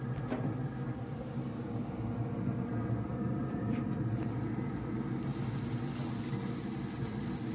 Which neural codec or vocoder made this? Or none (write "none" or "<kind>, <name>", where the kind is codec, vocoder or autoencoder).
none